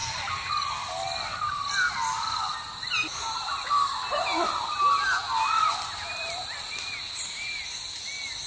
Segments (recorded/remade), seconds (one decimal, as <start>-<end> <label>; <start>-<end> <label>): 0.0-8.5 recorded